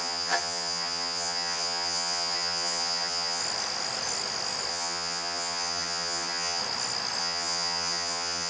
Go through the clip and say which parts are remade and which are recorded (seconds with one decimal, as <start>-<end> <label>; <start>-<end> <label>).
0.0-3.4 remade; 3.4-4.7 recorded; 4.7-6.6 remade; 6.6-7.2 recorded; 7.2-8.5 remade